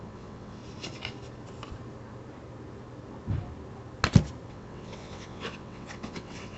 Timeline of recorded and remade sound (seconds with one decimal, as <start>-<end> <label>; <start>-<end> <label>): 0.0-0.6 remade; 0.6-4.5 recorded; 4.5-6.6 remade